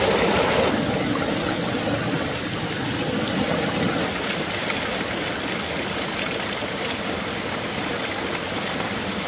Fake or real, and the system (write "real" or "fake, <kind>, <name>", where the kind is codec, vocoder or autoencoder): real